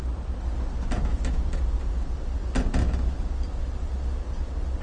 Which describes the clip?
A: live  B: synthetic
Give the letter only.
A